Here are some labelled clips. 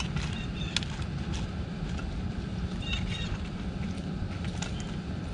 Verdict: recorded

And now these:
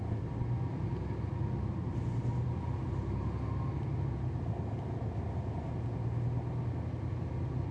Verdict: recorded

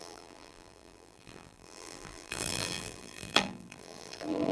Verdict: remade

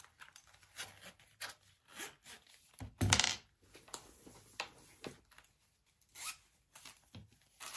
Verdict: recorded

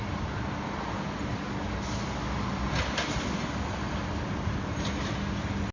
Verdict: recorded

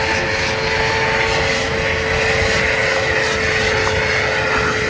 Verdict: recorded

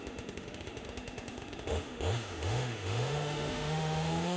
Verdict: remade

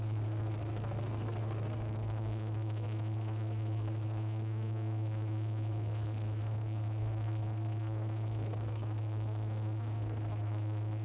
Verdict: remade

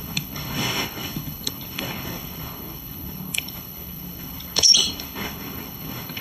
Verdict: remade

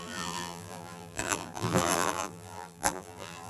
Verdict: remade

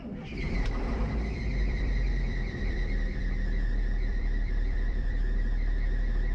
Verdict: remade